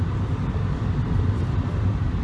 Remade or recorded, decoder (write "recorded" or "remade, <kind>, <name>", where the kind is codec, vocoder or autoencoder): recorded